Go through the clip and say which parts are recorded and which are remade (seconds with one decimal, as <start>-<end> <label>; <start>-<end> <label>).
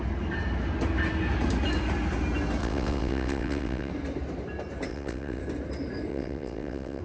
0.0-2.6 recorded; 2.6-3.9 remade; 3.9-4.9 recorded; 4.9-5.4 remade; 5.4-6.1 recorded; 6.1-7.0 remade